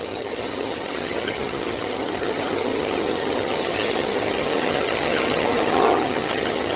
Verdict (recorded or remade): remade